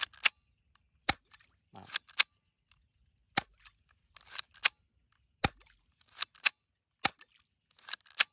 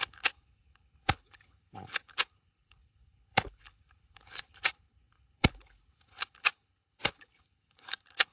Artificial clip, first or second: second